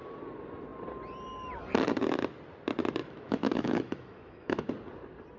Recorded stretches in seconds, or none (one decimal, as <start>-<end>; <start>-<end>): 0.0-3.0; 4.7-5.4

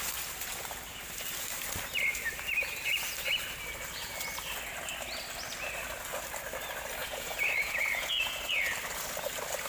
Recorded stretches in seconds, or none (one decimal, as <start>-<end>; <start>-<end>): 0.0-7.0; 8.4-9.7

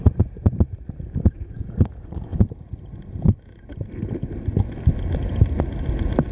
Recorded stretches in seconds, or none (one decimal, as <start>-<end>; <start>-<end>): 0.4-1.3; 2.3-6.3

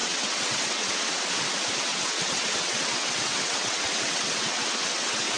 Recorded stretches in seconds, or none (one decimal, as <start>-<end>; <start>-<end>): 1.2-1.9

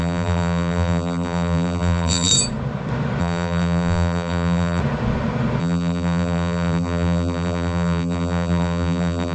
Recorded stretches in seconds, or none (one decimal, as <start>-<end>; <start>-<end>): 2.3-3.2; 4.8-5.6

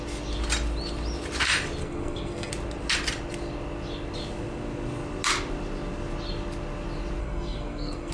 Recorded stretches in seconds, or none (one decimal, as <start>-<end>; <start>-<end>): 0.0-1.8; 2.5-7.2

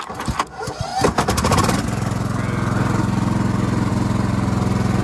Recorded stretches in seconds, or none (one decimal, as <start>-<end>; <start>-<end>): 0.0-5.0